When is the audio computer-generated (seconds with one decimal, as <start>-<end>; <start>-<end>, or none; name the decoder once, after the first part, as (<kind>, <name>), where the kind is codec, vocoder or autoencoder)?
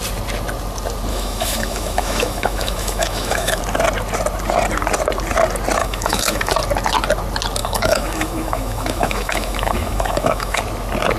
1.1-3.6 (autoencoder, DAC-VAE); 5.8-6.5; 7.6-10.6